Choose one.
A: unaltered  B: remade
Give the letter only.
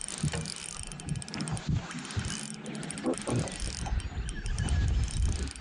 A